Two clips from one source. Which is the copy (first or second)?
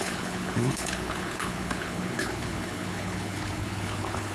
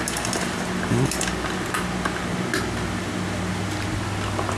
first